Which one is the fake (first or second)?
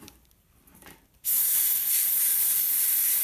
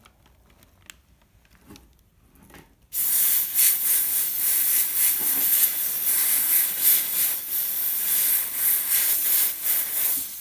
first